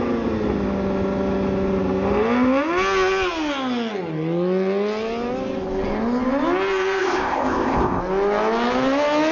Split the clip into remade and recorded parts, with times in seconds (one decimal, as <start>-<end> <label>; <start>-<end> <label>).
0.0-7.0 recorded; 7.0-8.0 remade; 8.0-9.3 recorded